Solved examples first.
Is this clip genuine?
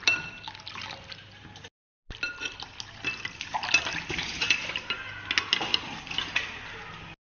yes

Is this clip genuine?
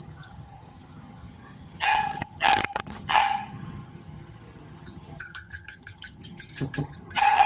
no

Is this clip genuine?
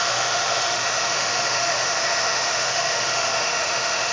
no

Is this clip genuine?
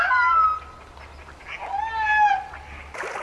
yes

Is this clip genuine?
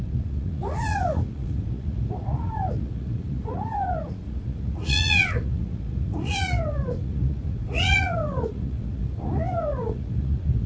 no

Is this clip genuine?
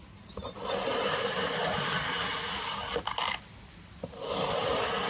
yes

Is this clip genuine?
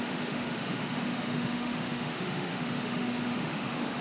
no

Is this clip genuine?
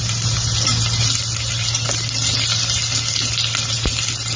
yes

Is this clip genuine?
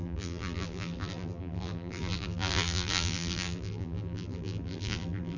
no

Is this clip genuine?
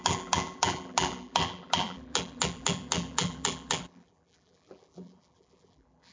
no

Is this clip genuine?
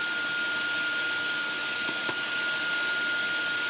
yes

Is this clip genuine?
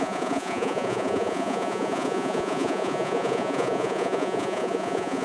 no